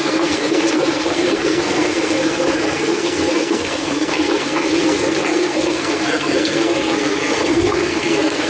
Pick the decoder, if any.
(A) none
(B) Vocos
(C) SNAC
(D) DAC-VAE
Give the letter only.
C